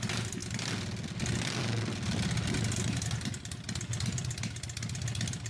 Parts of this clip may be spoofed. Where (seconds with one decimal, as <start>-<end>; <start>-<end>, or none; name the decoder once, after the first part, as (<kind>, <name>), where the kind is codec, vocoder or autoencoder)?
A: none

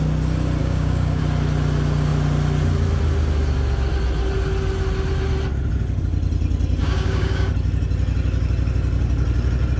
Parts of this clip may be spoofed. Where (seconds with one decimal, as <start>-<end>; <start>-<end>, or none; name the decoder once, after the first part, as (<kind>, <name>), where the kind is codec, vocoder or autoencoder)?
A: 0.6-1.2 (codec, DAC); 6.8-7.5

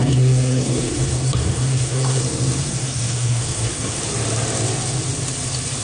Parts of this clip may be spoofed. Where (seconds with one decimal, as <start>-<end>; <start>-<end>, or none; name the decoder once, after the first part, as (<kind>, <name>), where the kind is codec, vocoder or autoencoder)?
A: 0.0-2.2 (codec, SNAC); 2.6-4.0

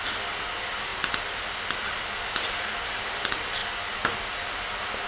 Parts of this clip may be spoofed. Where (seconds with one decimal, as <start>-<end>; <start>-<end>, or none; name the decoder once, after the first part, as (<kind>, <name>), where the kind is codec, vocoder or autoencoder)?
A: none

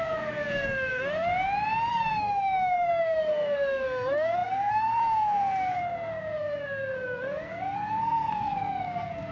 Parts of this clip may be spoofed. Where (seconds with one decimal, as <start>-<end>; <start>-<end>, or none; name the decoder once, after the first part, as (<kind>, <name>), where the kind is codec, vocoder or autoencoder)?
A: 0.0-1.3 (codec, SNAC); 1.9-9.3

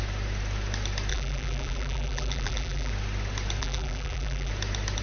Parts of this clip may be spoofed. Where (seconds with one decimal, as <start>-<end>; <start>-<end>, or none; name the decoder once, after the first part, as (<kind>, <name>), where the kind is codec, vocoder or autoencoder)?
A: 1.1-2.9 (vocoder, BigVGAN v2); 3.6-4.5